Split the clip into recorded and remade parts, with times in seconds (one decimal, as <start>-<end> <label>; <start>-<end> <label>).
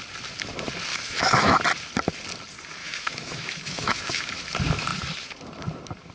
0.0-0.9 recorded; 0.9-1.6 remade; 1.6-2.8 recorded; 2.8-4.3 remade; 4.3-6.1 recorded